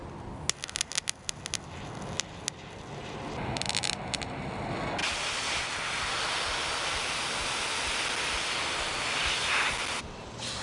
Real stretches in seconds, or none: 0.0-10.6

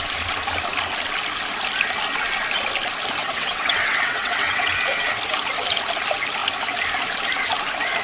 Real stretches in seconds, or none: 0.0-3.2; 4.7-8.0

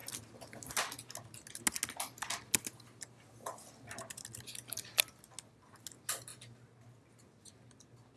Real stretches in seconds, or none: 0.0-8.2

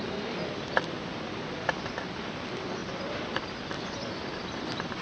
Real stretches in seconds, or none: 0.0-5.0

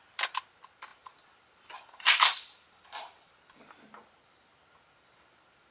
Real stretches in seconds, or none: 0.0-0.9; 3.3-5.7